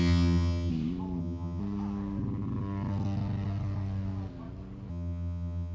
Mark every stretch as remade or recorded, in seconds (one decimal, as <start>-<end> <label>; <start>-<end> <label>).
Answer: 0.0-0.7 remade; 0.7-1.2 recorded; 1.2-1.6 remade; 1.6-4.9 recorded; 4.9-5.7 remade